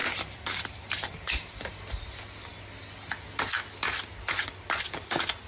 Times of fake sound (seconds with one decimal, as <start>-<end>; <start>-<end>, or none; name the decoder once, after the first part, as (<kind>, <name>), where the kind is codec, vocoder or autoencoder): 0.0-1.7 (vocoder, BigVGAN v2)